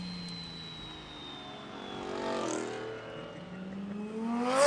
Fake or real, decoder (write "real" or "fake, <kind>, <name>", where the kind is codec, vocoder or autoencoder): real